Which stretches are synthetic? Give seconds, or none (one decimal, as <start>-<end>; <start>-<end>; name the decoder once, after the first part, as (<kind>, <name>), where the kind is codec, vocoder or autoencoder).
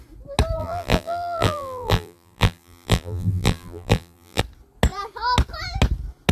0.6-4.4 (vocoder, BigVGAN v2)